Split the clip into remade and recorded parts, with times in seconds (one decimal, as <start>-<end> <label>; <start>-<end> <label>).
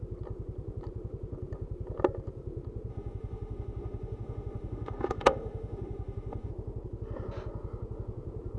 0.0-2.9 recorded; 2.9-6.5 remade; 6.5-8.6 recorded